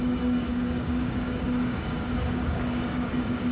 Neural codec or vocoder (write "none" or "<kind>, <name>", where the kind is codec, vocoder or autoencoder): codec, DAC